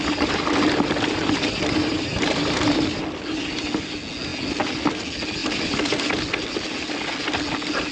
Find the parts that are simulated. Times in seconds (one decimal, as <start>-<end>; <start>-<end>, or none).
none